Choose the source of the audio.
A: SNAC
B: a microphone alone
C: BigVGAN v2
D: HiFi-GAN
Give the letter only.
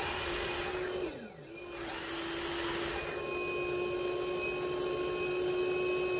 B